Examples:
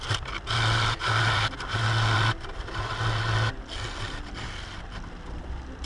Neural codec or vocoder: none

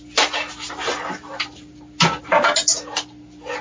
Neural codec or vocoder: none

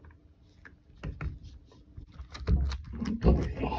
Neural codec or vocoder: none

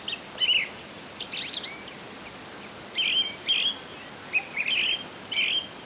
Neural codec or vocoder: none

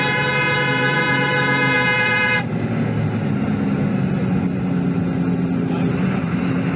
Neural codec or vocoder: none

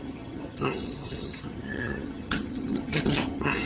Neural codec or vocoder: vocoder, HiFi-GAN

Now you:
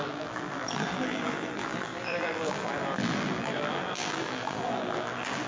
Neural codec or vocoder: vocoder, BigVGAN v2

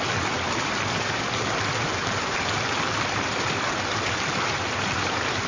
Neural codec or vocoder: vocoder, BigVGAN v2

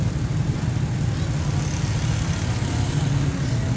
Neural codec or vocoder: none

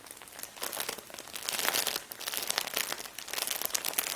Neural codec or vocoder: none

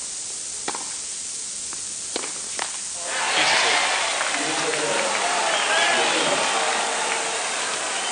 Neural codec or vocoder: none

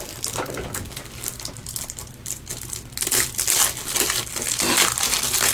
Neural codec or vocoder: none